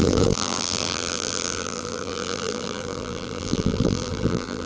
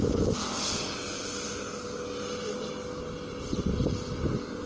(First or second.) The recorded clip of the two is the second